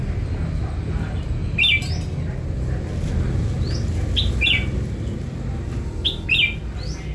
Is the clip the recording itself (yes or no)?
yes